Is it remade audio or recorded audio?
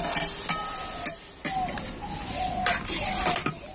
recorded